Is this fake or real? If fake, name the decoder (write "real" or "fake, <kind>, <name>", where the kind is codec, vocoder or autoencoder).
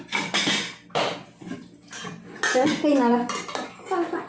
real